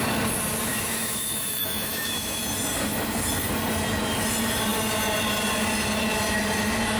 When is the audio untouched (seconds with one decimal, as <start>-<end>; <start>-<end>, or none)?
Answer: 0.0-0.7; 2.4-7.0